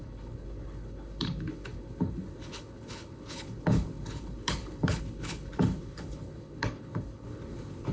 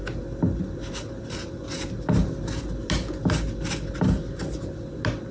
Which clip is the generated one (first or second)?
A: first